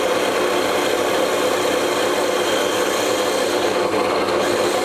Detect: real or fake real